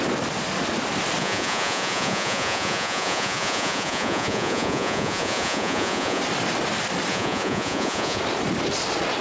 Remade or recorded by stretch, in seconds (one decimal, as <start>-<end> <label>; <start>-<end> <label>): 0.0-1.2 recorded; 1.2-6.2 remade; 6.2-7.1 recorded; 7.1-8.2 remade; 8.2-9.2 recorded